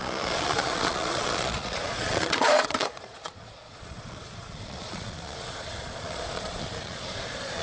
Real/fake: fake